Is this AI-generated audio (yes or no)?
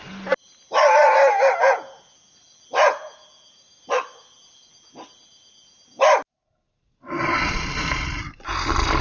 no